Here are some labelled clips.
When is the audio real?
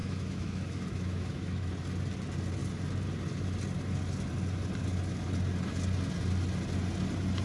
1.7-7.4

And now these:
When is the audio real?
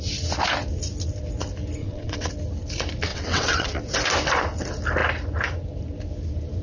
0.0-1.8; 2.3-3.1; 3.8-6.6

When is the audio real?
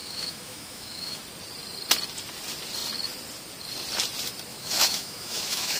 1.2-4.5